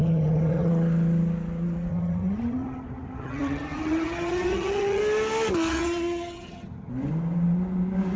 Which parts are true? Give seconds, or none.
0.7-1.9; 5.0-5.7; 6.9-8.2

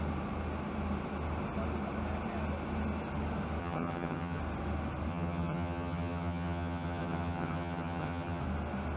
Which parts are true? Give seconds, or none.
0.0-3.6; 4.4-5.1; 8.4-9.0

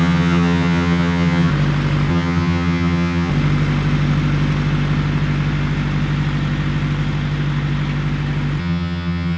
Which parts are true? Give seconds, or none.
1.5-2.1; 3.3-8.6

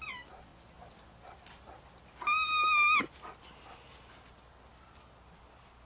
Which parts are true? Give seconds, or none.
0.0-5.9

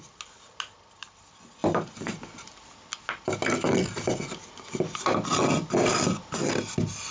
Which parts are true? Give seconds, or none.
0.0-7.1